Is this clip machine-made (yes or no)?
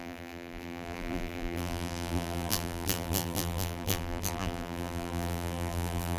yes